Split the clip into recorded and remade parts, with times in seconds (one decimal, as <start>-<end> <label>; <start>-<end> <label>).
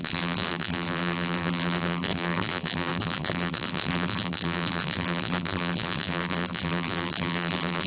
0.0-7.9 remade